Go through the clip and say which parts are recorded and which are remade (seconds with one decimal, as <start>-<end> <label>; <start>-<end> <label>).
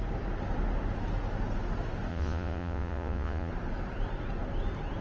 0.0-2.1 recorded; 2.1-3.5 remade; 3.5-5.0 recorded